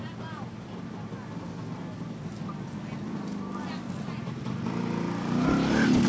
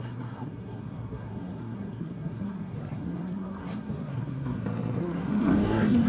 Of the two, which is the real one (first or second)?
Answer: first